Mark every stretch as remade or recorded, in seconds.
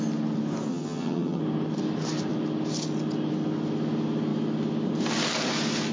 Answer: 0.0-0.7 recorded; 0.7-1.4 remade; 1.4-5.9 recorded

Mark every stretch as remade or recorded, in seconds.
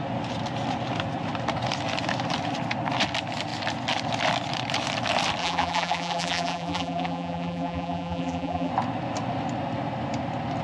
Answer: 0.0-5.4 recorded; 5.4-8.7 remade; 8.7-10.6 recorded